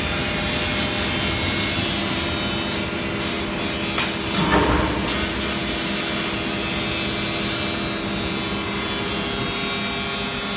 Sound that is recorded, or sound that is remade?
recorded